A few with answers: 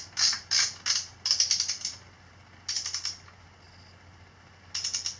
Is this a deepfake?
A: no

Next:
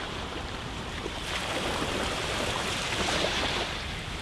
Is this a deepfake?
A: yes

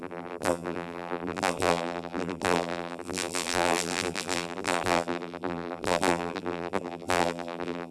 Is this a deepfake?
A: yes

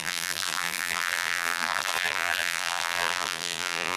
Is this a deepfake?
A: yes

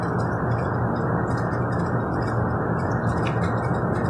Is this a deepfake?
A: no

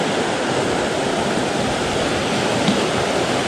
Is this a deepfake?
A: no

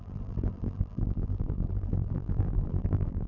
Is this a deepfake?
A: yes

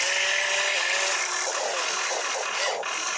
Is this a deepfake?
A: no